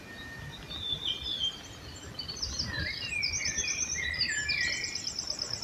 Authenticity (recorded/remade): recorded